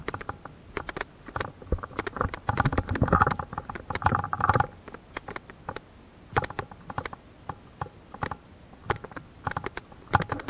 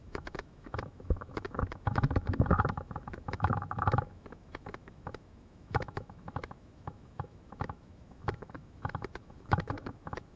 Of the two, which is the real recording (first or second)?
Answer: first